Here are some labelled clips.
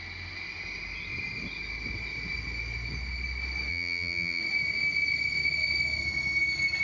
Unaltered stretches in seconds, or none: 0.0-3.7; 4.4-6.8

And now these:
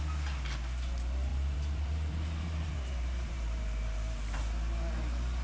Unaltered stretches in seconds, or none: 0.0-1.3; 4.4-5.4

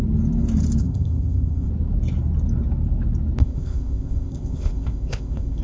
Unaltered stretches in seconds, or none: 0.0-0.8; 1.7-3.4

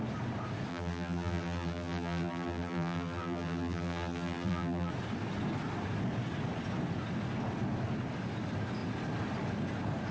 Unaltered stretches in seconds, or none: 0.0-0.7; 4.9-10.1

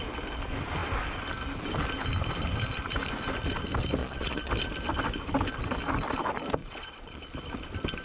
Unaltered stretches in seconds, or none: 0.0-4.0; 4.5-6.6; 7.2-8.0

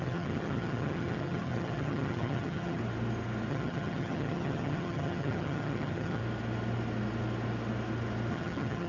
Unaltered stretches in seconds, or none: 2.8-3.5; 6.2-8.3

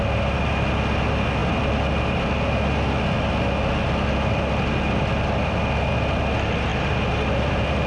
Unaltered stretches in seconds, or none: 0.0-7.9

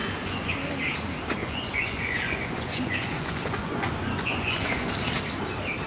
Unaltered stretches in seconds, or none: 0.5-1.4; 4.9-5.9